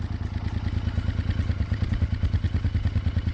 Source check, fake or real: real